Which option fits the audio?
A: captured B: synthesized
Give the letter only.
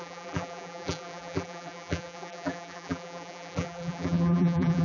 B